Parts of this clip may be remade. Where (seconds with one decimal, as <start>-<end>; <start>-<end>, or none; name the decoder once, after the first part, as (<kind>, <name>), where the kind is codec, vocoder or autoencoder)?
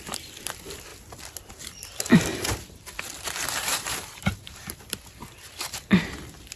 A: 0.0-0.9 (vocoder, BigVGAN v2); 1.5-6.6